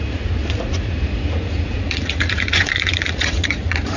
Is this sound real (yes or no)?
no